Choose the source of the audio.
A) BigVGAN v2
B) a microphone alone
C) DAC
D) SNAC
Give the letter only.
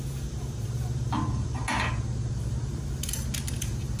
A